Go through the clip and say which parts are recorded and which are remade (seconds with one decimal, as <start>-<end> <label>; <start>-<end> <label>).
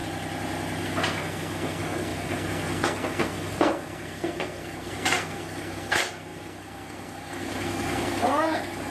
0.0-0.8 recorded; 0.8-8.9 remade